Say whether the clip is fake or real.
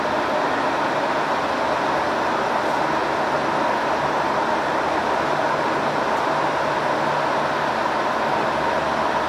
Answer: real